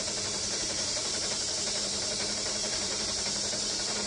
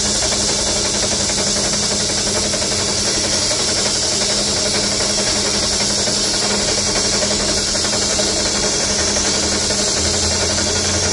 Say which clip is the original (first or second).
second